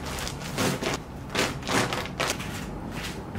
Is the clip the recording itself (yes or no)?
yes